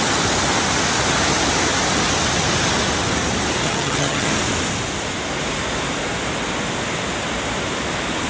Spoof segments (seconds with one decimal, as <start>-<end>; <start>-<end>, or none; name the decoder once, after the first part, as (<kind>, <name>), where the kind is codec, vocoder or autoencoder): 3.6-4.3 (vocoder, HiFi-GAN)